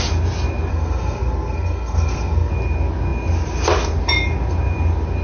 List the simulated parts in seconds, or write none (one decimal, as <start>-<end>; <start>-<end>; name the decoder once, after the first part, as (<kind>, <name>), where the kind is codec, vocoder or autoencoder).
0.7-2.5 (codec, SNAC)